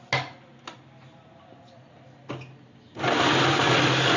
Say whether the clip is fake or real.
real